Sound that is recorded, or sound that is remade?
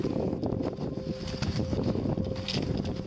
recorded